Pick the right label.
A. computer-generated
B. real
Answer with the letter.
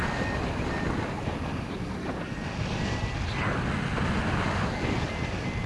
B